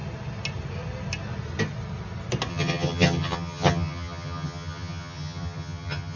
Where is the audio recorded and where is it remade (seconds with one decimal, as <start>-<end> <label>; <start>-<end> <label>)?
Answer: 0.0-2.5 recorded; 2.5-6.2 remade